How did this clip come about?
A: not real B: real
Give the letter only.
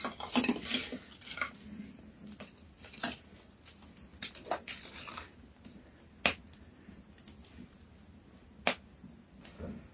B